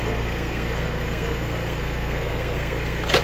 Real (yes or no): no